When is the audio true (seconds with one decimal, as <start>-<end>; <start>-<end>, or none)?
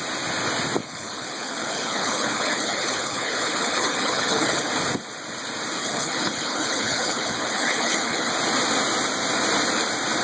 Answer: 0.0-0.8; 4.7-5.8; 8.3-10.2